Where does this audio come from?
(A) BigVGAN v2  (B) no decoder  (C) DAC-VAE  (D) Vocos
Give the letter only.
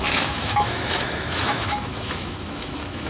C